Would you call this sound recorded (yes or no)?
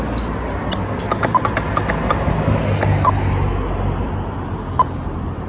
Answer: yes